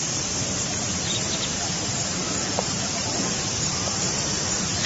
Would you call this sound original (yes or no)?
no